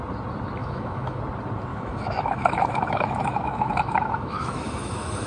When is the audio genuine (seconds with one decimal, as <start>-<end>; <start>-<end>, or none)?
0.0-0.6; 1.2-1.7